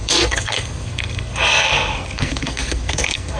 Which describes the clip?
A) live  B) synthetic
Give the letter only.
B